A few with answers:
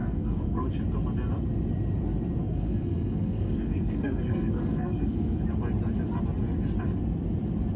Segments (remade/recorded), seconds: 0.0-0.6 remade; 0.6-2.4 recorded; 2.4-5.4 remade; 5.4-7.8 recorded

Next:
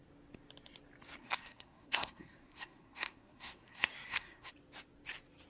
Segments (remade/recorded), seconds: 0.0-1.2 recorded; 1.2-4.5 remade; 4.5-5.5 recorded

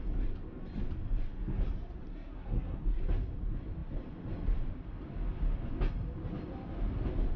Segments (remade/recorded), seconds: 0.0-2.0 recorded; 2.0-3.0 remade; 3.0-7.4 recorded

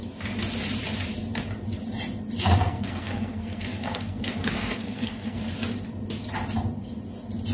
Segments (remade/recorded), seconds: 0.0-2.4 recorded; 2.4-5.4 remade; 5.4-7.5 recorded

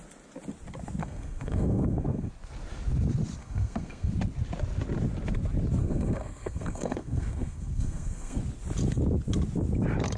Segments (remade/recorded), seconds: 0.0-1.0 recorded; 1.0-2.3 remade; 2.3-3.4 recorded; 3.4-4.1 remade; 4.1-5.8 recorded; 5.8-8.4 remade; 8.4-10.2 recorded

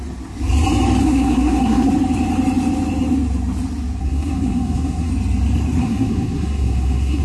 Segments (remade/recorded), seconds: 0.0-1.0 recorded; 1.0-1.9 remade; 1.9-4.0 recorded; 4.0-5.1 remade; 5.1-5.8 recorded; 5.8-7.2 remade

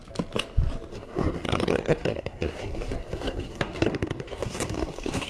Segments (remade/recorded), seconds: 0.0-0.9 recorded; 0.9-5.3 remade

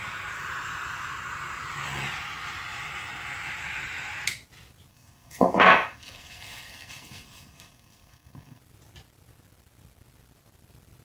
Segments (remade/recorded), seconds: 0.0-4.9 recorded; 4.9-8.6 remade; 8.6-11.0 recorded